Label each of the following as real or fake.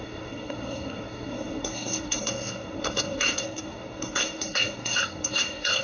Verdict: fake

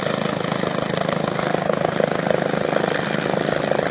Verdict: real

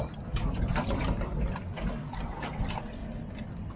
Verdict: real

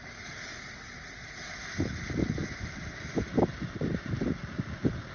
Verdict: real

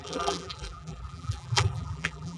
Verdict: fake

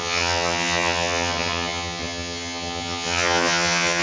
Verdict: fake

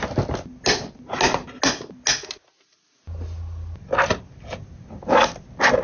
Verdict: real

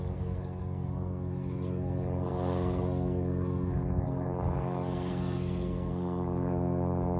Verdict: fake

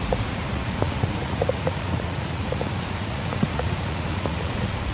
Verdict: fake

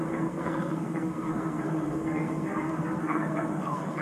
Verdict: fake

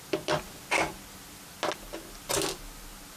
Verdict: real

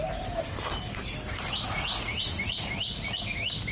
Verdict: real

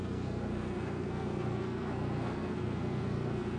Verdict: fake